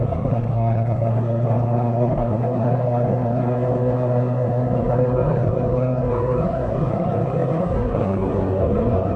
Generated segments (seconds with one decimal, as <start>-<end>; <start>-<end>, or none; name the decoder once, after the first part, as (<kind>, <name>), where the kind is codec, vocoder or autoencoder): 0.0-9.2 (codec, SNAC)